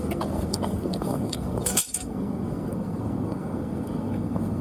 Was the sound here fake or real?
fake